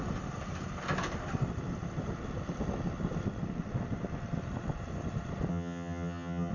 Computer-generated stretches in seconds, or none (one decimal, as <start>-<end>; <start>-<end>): 5.5-6.5